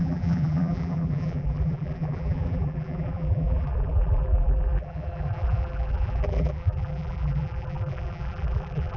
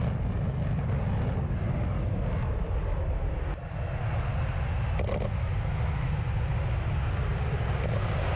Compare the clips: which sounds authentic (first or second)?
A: second